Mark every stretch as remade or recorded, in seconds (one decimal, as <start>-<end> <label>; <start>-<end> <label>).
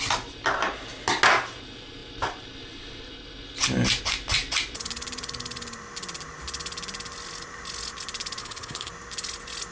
0.0-8.4 recorded; 8.4-8.9 remade; 8.9-9.7 recorded